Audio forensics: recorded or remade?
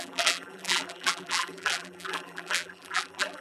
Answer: remade